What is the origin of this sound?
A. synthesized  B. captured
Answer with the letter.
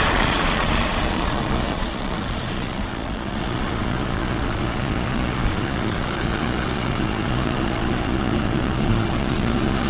A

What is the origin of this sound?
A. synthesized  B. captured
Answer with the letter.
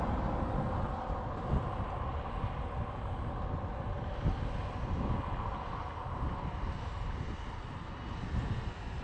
B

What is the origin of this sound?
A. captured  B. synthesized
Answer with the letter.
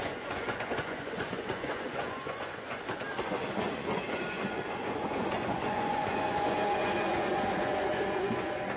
B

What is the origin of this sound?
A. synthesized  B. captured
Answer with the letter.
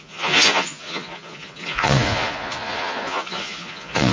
A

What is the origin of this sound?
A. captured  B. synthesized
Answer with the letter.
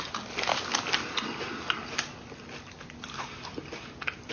A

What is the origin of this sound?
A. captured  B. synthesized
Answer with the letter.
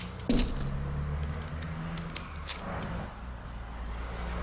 A